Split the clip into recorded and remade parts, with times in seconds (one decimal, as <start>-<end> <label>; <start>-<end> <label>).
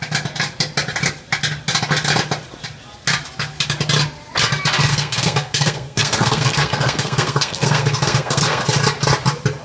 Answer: 0.0-4.9 recorded; 4.9-8.6 remade; 8.6-9.6 recorded